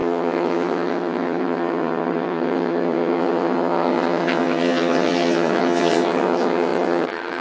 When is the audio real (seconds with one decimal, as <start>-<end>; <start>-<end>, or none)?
none